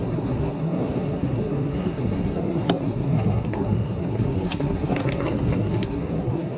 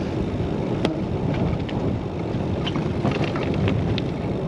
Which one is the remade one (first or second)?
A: first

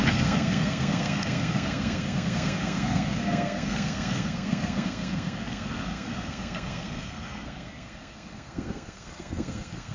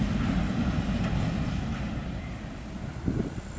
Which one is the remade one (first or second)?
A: first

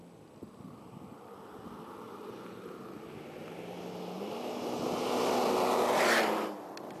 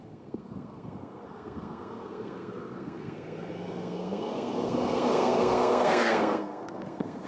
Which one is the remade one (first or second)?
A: second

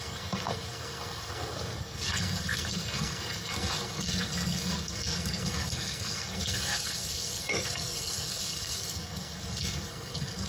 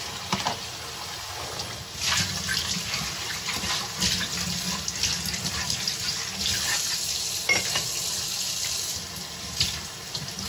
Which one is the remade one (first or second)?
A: first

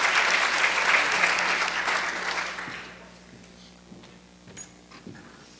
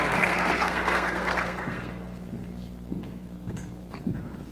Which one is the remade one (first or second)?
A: second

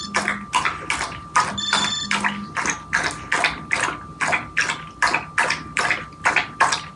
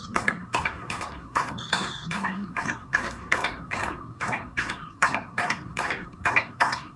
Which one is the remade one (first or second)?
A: second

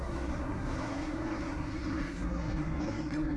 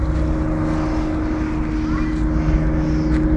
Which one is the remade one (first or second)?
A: first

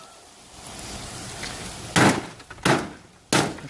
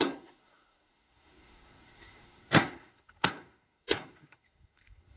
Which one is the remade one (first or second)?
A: second